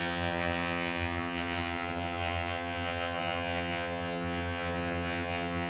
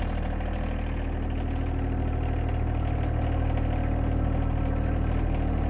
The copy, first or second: first